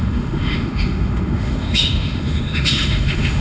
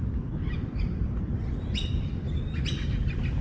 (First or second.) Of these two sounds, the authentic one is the second